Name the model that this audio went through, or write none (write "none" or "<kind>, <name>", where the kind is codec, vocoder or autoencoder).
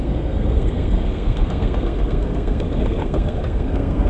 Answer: codec, SNAC